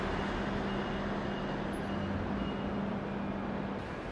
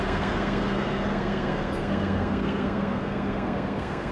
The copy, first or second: second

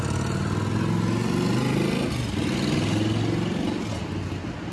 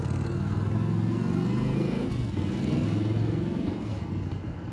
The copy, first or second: second